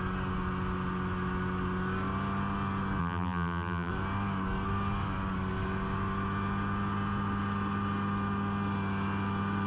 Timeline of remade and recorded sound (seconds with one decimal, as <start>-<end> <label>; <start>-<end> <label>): 0.0-3.0 recorded; 3.0-3.9 remade; 3.9-9.7 recorded